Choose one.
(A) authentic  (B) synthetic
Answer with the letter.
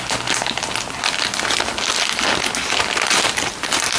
A